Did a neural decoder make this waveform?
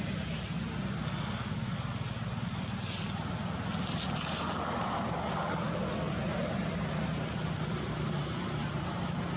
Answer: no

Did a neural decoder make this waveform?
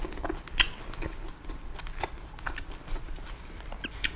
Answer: no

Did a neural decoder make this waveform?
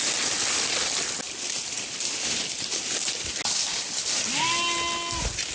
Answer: no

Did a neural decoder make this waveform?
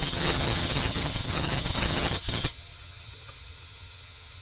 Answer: yes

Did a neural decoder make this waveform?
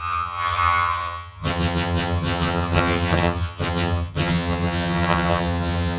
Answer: yes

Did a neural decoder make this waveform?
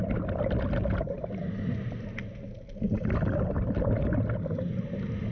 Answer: no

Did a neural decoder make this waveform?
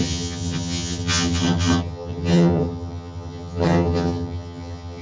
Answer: yes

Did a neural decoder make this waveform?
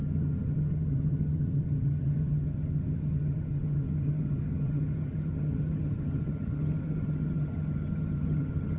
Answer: yes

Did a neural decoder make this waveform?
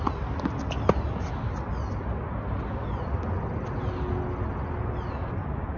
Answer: no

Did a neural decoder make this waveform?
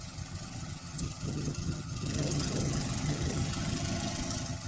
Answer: yes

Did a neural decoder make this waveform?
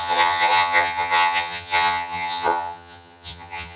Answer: yes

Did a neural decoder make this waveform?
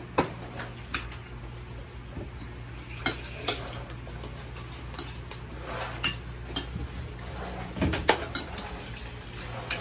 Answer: no